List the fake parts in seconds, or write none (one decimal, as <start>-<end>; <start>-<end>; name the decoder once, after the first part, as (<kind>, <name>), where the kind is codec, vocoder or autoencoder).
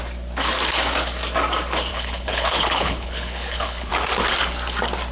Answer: 1.9-3.9 (codec, HILCodec)